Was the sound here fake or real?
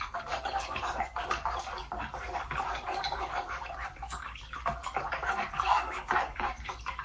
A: fake